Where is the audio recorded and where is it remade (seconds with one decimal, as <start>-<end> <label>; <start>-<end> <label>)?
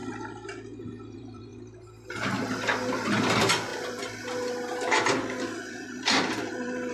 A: 0.0-0.9 recorded; 0.9-1.5 remade; 1.5-2.9 recorded; 2.9-6.9 remade